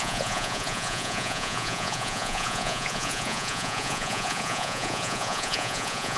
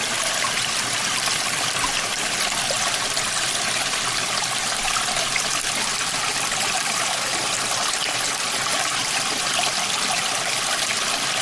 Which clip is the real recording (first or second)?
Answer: second